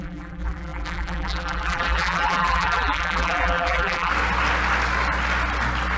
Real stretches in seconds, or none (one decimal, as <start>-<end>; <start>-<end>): 4.1-6.0